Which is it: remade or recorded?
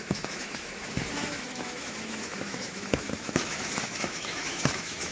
remade